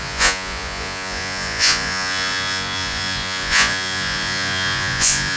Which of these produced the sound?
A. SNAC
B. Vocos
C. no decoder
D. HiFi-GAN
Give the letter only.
B